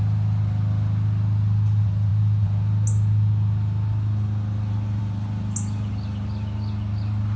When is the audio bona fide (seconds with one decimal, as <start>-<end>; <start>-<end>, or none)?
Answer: 0.0-7.4